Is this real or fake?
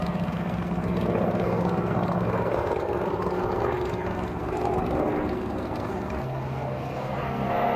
fake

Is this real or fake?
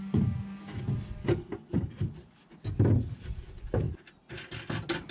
real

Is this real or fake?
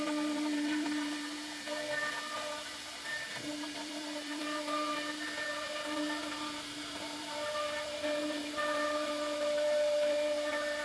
fake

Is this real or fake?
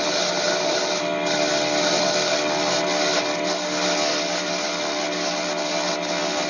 real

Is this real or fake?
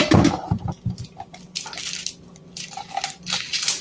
real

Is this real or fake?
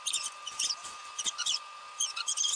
fake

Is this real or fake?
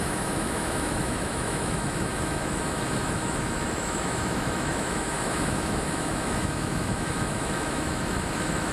fake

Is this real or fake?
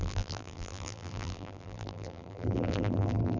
fake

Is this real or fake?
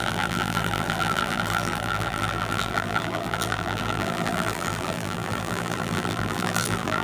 fake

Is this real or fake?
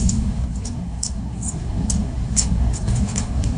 fake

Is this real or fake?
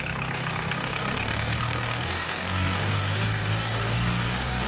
fake